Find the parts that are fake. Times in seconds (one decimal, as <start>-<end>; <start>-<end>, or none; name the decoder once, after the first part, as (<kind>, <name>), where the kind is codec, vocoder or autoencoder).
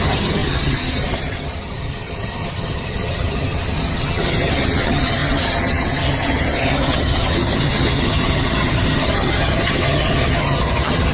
0.0-11.1 (vocoder, HiFi-GAN)